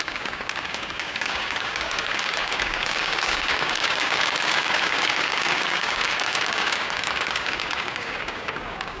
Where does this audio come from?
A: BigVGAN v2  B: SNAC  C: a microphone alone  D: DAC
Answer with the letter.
D